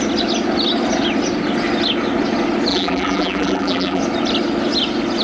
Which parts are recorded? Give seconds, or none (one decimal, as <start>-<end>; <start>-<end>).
0.0-2.7; 4.0-5.2